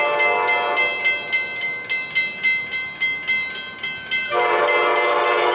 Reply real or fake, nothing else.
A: real